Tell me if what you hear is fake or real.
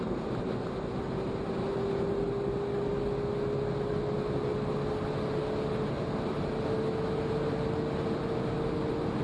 real